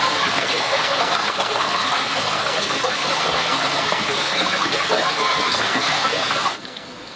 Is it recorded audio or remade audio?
remade